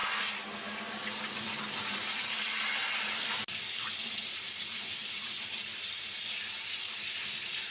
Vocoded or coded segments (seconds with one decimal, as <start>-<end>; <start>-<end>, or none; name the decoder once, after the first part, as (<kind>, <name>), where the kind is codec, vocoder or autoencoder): none